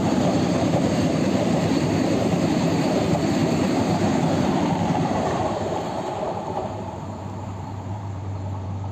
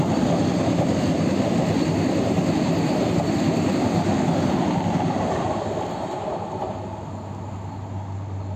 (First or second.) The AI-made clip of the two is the first